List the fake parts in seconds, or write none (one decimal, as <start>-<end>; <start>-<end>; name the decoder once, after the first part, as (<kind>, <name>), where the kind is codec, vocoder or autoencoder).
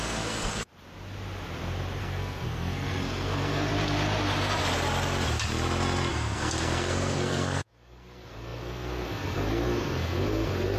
0.0-0.7 (codec, SNAC); 2.0-3.7; 6.1-10.8